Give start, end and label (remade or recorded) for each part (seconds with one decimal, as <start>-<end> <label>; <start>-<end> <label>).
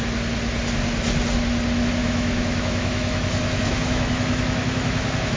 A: 0.0-2.0 recorded; 2.0-5.4 remade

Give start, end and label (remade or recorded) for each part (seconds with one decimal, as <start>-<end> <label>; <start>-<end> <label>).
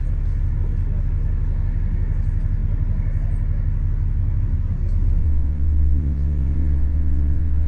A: 0.0-5.2 recorded; 5.2-7.7 remade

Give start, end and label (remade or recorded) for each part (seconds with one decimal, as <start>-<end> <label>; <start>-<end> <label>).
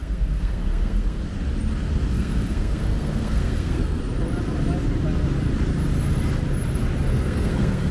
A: 0.0-1.2 remade; 1.2-2.1 recorded; 2.1-4.0 remade; 4.0-7.1 recorded; 7.1-7.9 remade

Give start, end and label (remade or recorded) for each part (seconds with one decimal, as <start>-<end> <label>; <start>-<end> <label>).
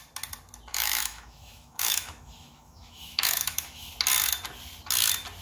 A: 0.0-0.7 recorded; 0.7-3.9 remade; 3.9-5.4 recorded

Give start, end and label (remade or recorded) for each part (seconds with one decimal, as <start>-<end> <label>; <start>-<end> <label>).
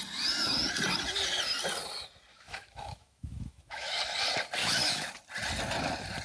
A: 0.0-2.3 recorded; 2.3-4.0 remade; 4.0-4.6 recorded; 4.6-5.1 remade; 5.1-6.2 recorded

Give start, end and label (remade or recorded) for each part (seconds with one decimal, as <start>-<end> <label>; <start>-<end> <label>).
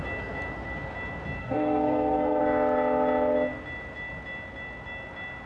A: 0.0-1.4 recorded; 1.4-2.4 remade; 2.4-5.5 recorded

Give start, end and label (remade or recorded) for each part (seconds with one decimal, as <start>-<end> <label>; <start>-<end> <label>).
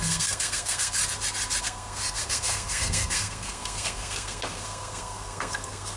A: 0.0-1.0 remade; 1.0-1.6 recorded; 1.6-6.0 remade